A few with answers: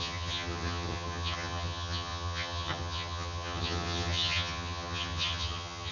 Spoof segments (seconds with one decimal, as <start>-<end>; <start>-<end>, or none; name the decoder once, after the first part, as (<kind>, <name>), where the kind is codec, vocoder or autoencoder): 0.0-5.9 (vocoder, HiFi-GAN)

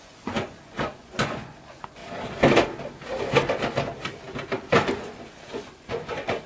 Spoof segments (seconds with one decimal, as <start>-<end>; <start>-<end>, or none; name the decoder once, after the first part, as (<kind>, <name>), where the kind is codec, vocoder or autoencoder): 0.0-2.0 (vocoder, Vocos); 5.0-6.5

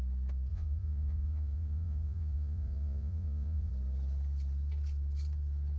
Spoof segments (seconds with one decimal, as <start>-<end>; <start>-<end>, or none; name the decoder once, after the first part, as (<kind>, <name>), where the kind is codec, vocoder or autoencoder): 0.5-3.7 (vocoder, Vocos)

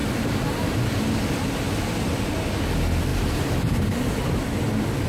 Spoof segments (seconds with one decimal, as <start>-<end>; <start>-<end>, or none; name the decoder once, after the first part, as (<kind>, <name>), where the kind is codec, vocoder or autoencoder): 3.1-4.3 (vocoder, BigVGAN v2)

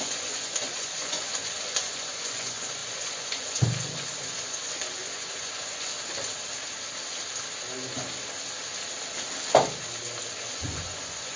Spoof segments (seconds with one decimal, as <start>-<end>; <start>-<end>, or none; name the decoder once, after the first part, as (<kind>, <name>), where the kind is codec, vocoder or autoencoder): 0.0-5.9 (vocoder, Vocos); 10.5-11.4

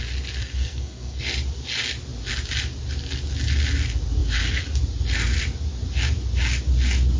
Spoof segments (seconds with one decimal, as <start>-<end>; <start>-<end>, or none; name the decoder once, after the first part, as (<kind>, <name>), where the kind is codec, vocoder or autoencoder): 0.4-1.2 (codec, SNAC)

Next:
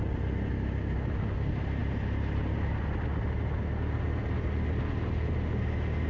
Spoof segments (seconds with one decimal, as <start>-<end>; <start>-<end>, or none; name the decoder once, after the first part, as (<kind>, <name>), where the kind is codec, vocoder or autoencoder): none

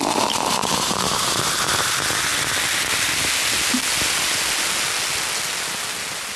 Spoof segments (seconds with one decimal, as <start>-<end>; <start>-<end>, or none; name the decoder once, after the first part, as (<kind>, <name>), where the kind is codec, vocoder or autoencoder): 0.6-1.9 (vocoder, BigVGAN v2)